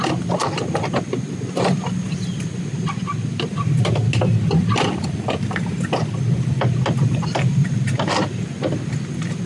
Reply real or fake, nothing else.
real